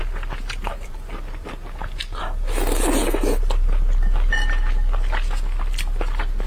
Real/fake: real